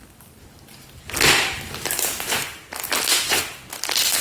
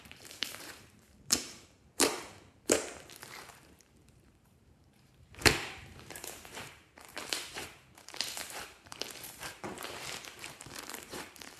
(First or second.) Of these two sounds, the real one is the first